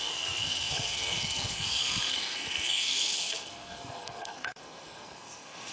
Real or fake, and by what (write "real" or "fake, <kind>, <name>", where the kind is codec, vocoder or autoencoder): fake, codec, SNAC